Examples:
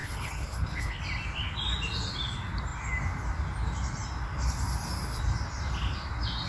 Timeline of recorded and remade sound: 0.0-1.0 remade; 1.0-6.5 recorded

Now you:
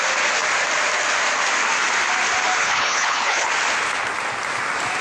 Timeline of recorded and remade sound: 0.0-2.6 recorded; 2.6-3.5 remade; 3.5-5.0 recorded

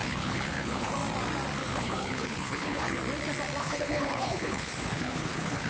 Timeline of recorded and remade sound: 0.0-0.9 remade; 0.9-1.6 recorded; 1.6-3.0 remade; 3.0-3.6 recorded; 3.6-5.7 remade